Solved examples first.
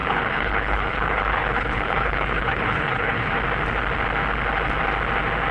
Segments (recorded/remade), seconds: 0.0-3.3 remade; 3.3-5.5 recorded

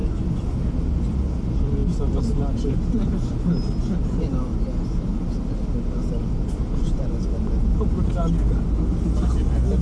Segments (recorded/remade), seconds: 0.0-9.8 recorded

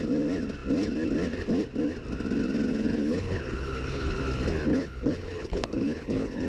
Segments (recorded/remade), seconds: 0.0-2.7 recorded; 2.7-4.2 remade; 4.2-4.7 recorded; 4.7-6.5 remade

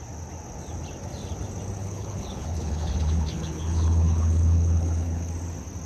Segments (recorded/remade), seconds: 0.0-1.8 recorded; 1.8-5.3 remade; 5.3-5.9 recorded